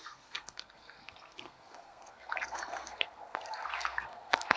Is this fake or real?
fake